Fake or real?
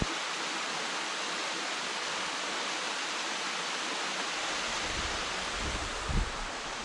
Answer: real